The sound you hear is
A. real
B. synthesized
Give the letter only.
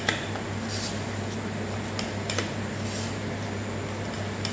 A